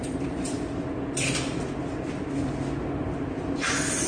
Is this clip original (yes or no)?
yes